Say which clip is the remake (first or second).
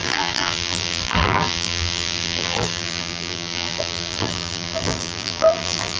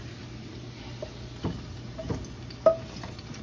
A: first